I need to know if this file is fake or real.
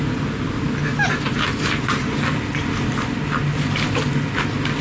real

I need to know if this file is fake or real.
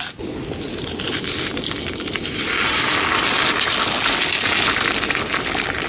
real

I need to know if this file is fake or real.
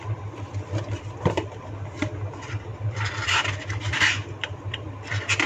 fake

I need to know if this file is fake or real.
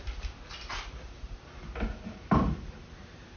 real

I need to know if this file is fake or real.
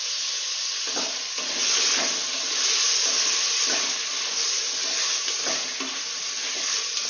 real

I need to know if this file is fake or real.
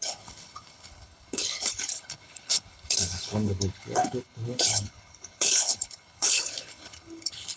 fake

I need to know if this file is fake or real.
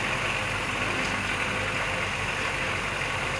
real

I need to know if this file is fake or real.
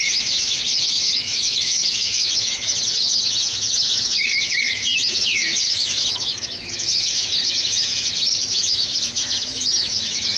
fake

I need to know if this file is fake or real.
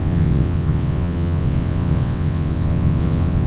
fake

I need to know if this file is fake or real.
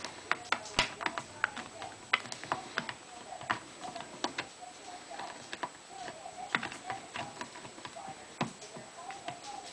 real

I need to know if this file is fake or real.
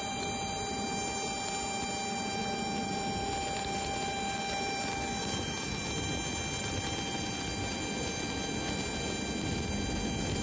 real